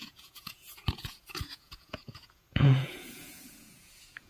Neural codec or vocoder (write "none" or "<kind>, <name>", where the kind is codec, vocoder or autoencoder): vocoder, Vocos